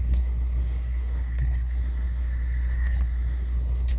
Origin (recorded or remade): remade